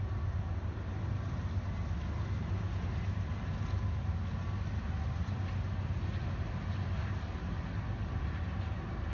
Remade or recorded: recorded